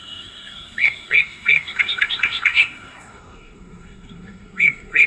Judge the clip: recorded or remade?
remade